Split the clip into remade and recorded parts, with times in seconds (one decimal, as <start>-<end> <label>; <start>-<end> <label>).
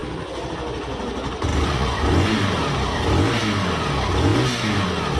0.0-1.5 recorded; 1.5-2.5 remade; 2.5-5.2 recorded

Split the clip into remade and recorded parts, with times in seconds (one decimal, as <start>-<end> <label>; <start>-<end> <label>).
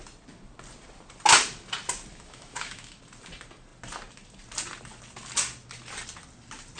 0.0-2.1 recorded; 2.1-3.0 remade; 3.0-6.8 recorded